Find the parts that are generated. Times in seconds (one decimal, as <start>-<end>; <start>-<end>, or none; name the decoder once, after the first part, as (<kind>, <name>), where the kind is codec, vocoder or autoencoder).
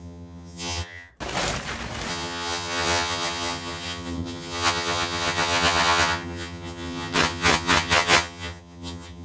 0.0-1.1 (vocoder, HiFi-GAN); 2.1-9.2